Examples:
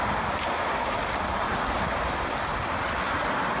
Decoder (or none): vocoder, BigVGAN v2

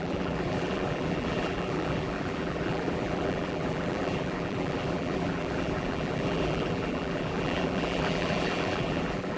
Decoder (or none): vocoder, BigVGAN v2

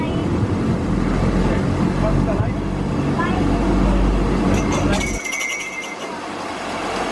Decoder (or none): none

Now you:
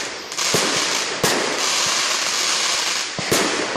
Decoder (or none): none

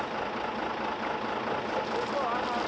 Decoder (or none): none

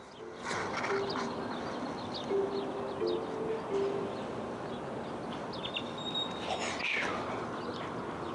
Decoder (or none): none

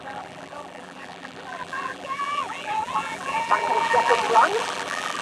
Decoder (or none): vocoder, BigVGAN v2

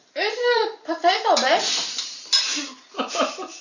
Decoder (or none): vocoder, BigVGAN v2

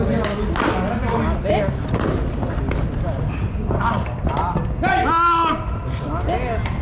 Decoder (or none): none